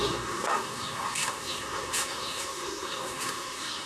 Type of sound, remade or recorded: remade